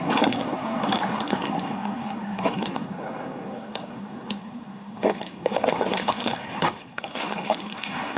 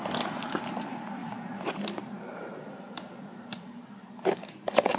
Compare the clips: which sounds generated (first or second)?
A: first